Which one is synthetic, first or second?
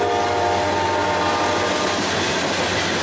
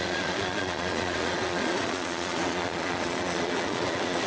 second